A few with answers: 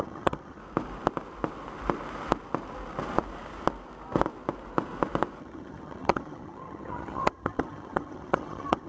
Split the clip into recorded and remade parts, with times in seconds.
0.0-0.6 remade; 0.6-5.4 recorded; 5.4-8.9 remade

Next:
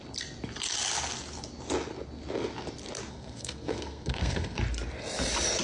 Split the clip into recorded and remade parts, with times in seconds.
0.0-3.1 recorded; 3.1-4.6 remade; 4.6-5.6 recorded

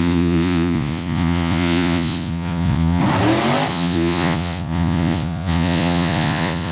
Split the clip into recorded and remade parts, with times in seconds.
0.0-3.0 remade; 3.0-3.7 recorded; 3.7-6.7 remade

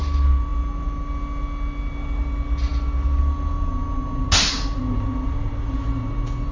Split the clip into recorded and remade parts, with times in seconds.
0.0-6.5 recorded

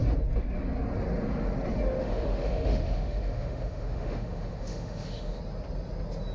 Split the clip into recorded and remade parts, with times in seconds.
0.0-2.0 recorded; 2.0-5.4 remade; 5.4-6.3 recorded

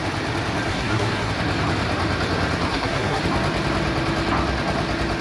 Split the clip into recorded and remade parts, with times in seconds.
0.0-0.7 recorded; 0.7-1.3 remade; 1.3-2.7 recorded; 2.7-3.2 remade; 3.2-5.2 recorded